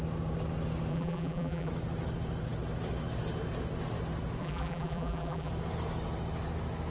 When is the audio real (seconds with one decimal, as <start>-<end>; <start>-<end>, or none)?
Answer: 0.0-0.9; 1.7-4.4; 5.5-6.9